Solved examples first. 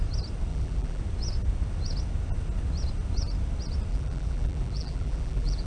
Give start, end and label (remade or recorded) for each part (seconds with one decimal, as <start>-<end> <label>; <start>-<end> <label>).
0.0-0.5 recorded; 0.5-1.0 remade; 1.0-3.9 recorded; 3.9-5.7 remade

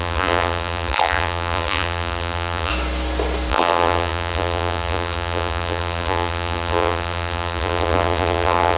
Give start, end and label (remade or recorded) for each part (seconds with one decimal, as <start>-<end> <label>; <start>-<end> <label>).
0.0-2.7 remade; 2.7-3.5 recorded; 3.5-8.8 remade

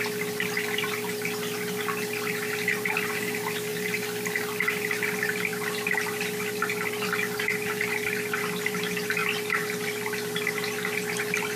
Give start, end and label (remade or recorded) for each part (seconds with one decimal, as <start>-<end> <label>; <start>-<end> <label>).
0.0-11.6 recorded

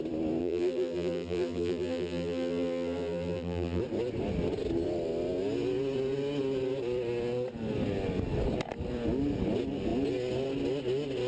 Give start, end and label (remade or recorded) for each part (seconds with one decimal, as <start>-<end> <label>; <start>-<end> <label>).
0.0-0.4 recorded; 0.4-3.8 remade; 3.8-11.3 recorded